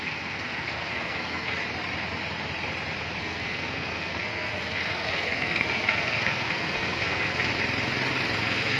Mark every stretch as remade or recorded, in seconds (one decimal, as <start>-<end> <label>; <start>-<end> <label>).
0.0-1.6 remade; 1.6-3.2 recorded; 3.2-7.5 remade; 7.5-8.4 recorded; 8.4-8.8 remade